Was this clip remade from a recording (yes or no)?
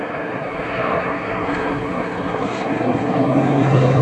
yes